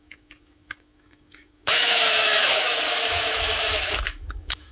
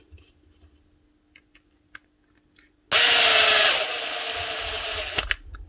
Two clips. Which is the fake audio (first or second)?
first